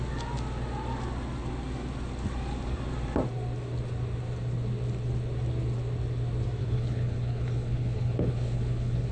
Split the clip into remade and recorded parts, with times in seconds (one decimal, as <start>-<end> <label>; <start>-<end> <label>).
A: 0.0-6.6 recorded; 6.6-9.1 remade